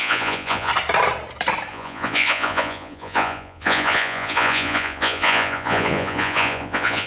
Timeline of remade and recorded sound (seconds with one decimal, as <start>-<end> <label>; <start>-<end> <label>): 0.0-0.7 remade; 0.7-1.7 recorded; 1.7-7.1 remade